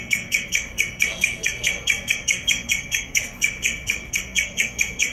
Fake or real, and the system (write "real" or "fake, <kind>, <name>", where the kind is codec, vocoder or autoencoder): fake, codec, SNAC